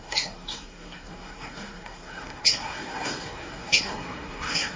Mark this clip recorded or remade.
remade